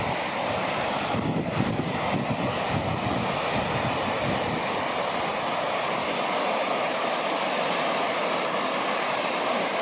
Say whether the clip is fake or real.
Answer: real